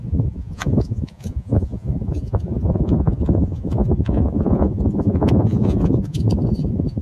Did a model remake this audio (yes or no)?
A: yes